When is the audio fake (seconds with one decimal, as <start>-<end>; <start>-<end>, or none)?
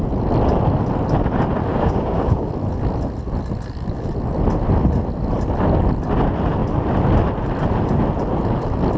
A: 1.7-2.5